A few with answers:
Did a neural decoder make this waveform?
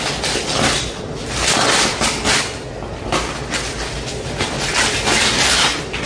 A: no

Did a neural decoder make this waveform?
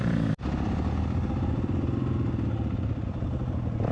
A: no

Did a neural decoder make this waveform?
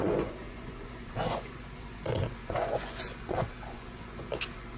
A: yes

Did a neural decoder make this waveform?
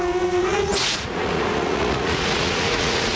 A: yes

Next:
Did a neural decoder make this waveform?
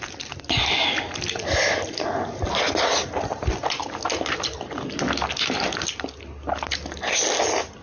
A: no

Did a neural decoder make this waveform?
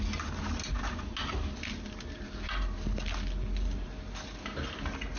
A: no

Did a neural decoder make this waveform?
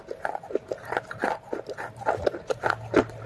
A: no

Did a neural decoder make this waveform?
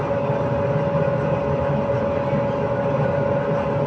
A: no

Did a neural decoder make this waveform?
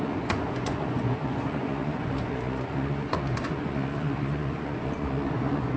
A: yes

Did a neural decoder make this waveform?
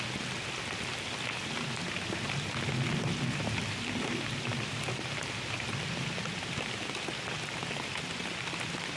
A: no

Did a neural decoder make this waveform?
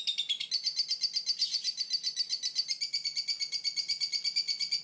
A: no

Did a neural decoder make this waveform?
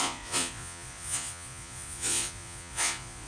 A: yes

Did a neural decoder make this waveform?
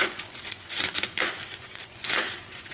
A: yes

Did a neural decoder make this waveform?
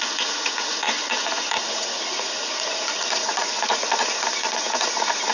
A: yes